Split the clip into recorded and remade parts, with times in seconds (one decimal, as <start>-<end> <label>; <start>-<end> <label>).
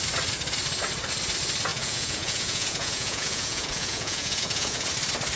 0.0-1.7 recorded; 1.7-4.9 remade; 4.9-5.4 recorded